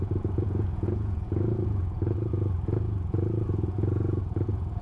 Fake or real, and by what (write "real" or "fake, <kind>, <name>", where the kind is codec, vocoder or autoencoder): fake, vocoder, Vocos